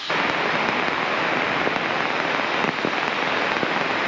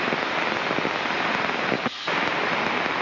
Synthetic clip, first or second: second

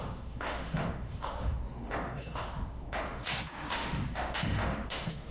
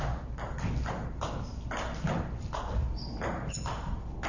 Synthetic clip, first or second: first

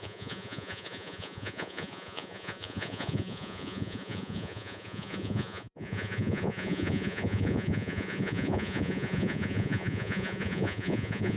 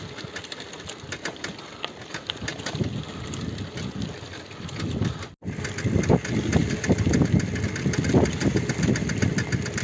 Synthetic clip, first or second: first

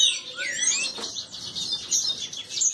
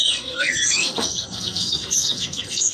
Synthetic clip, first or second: second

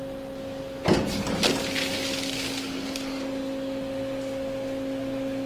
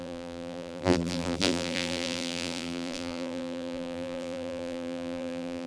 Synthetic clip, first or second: second